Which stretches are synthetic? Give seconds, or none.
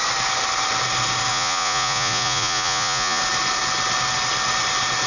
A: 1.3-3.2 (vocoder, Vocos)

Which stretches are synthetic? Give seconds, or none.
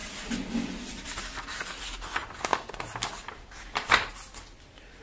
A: 0.0-1.7 (vocoder, BigVGAN v2); 2.5-4.1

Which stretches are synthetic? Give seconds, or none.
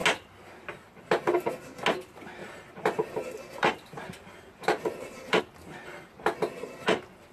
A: 2.4-5.4 (vocoder, BigVGAN v2)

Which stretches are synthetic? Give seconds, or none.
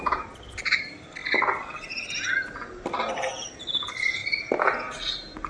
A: none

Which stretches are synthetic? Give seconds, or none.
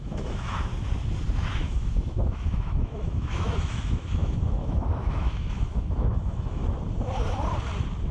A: 0.0-0.7 (autoencoder, DAC-VAE); 1.4-6.6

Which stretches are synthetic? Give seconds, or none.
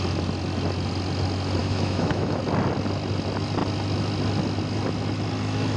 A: 1.6-2.4 (autoencoder, DAC-VAE)